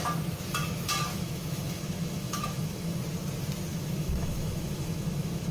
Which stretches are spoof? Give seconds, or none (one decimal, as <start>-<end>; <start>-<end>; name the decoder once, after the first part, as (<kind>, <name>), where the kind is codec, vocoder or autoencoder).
1.1-3.0 (autoencoder, DAC-VAE); 3.7-5.5